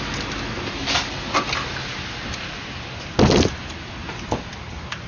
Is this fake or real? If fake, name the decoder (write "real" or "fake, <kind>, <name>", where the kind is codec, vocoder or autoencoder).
real